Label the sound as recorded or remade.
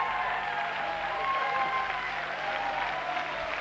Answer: recorded